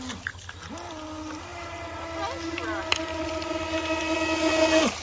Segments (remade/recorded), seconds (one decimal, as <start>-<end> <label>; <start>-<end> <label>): 0.0-5.0 recorded